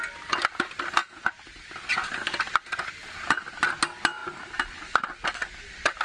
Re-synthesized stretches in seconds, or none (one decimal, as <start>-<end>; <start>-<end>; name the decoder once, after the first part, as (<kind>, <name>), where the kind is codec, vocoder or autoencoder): none